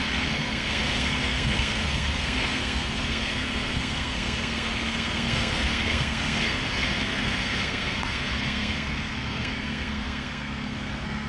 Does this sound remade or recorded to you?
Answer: remade